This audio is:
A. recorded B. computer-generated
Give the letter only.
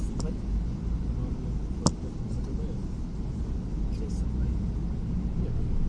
A